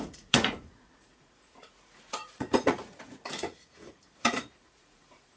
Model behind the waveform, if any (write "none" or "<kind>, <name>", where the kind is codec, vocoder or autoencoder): vocoder, Vocos